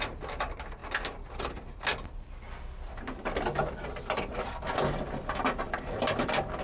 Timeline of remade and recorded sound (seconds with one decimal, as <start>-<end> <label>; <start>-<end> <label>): 0.0-6.6 recorded